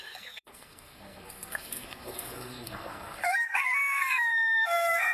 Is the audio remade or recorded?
remade